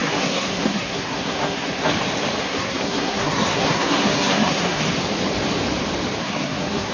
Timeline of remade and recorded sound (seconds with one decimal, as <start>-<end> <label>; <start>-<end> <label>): 0.0-1.9 remade; 1.9-2.4 recorded; 2.4-4.8 remade; 4.8-6.2 recorded; 6.2-6.9 remade